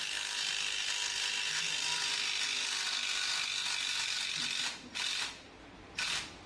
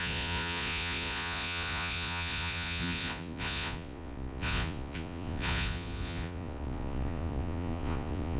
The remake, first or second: second